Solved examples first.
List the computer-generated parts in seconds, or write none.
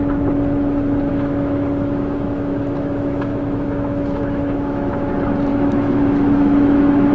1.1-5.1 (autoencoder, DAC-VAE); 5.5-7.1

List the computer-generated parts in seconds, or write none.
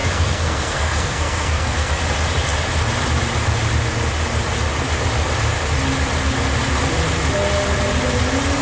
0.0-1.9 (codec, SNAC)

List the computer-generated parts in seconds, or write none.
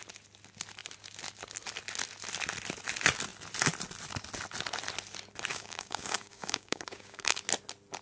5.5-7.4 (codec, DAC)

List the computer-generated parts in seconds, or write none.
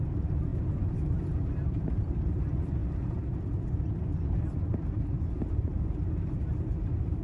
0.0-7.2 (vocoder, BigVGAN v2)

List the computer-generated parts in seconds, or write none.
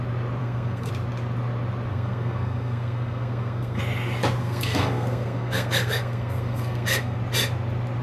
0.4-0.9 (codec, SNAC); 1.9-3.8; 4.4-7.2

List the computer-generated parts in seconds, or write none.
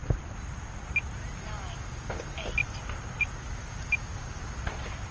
none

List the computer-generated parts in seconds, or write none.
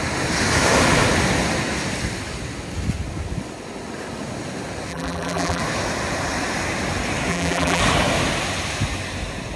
4.9-5.6 (vocoder, BigVGAN v2); 7.3-7.8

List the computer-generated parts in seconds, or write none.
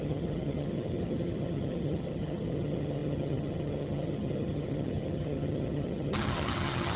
0.0-7.0 (vocoder, HiFi-GAN)